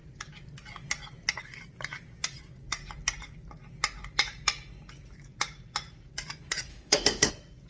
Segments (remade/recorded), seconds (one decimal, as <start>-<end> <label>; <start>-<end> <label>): 0.0-6.7 recorded; 6.7-7.3 remade; 7.3-7.7 recorded